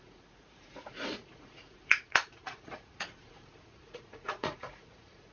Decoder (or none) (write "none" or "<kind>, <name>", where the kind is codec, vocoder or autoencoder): vocoder, Vocos